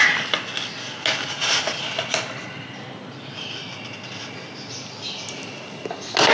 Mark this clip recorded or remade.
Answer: recorded